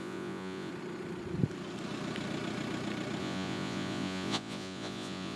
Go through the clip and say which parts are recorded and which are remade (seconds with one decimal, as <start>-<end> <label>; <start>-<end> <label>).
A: 0.0-0.7 remade; 0.7-3.2 recorded; 3.2-5.4 remade